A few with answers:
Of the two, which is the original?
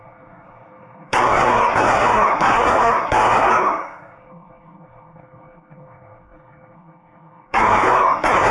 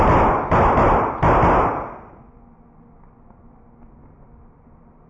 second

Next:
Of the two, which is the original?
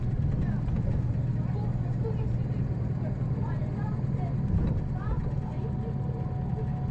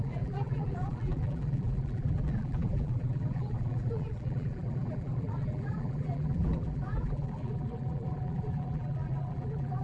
first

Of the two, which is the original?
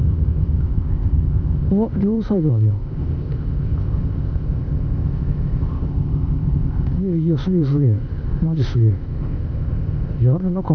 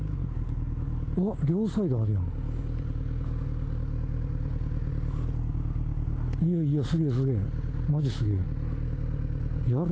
second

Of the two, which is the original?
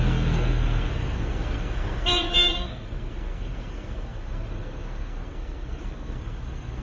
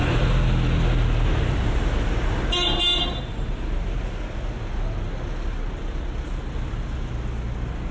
second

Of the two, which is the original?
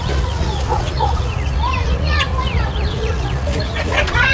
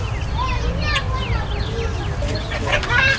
second